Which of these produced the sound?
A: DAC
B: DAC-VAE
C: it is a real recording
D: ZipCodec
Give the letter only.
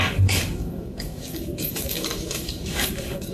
A